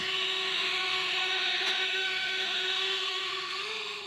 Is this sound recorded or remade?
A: remade